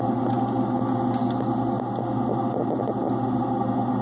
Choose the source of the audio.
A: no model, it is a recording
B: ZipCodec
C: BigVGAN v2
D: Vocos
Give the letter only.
A